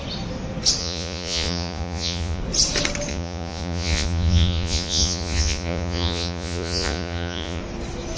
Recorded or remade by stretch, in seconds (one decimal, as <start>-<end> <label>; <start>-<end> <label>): 0.0-0.8 recorded; 0.8-2.4 remade; 2.4-3.1 recorded; 3.1-7.6 remade; 7.6-8.2 recorded